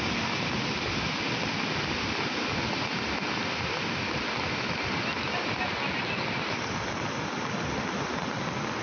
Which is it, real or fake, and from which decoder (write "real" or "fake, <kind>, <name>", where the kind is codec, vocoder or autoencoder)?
real